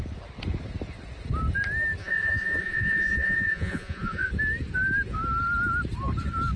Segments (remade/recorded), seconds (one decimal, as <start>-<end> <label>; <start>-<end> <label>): 0.0-2.0 recorded; 2.0-4.3 remade; 4.3-6.6 recorded